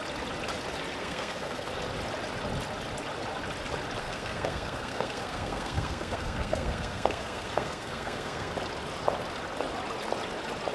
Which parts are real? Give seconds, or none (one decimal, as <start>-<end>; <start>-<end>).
0.0-1.0; 1.7-4.0; 8.5-10.7

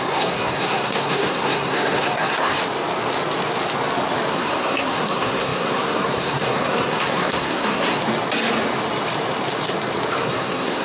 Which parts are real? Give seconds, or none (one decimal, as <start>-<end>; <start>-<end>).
2.6-4.3; 8.0-10.2

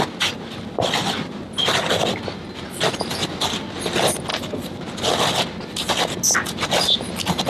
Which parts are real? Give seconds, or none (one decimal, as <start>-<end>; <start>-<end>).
0.0-7.5

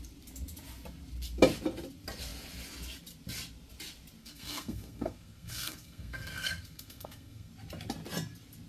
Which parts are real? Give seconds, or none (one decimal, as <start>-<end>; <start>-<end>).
0.0-4.2; 7.5-8.7

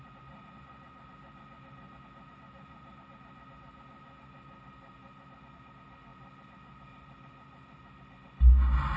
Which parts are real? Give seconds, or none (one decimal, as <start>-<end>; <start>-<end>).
0.0-9.0